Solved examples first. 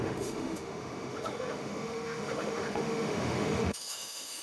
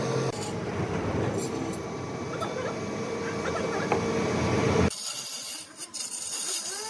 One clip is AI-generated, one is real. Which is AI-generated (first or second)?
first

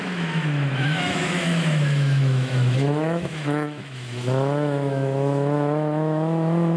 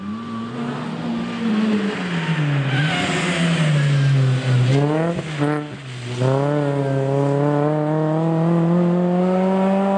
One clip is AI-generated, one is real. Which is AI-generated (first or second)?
first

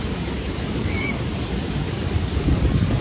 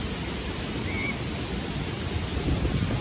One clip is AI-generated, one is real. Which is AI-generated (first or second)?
first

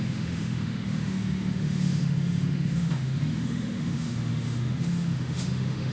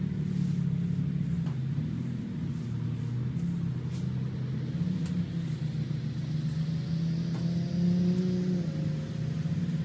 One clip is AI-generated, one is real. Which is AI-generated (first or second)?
first